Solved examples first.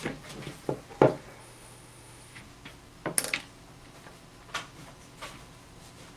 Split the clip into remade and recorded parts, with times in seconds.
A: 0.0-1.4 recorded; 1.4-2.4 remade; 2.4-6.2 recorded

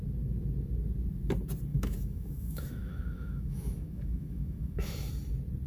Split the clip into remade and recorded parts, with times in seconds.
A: 0.0-1.7 recorded; 1.7-5.1 remade; 5.1-5.7 recorded

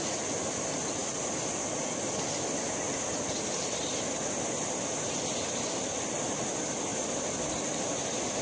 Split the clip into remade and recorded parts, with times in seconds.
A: 0.0-8.4 recorded

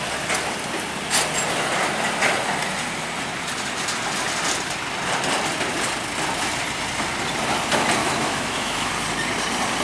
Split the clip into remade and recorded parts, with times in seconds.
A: 0.0-8.0 recorded; 8.0-8.9 remade; 8.9-9.8 recorded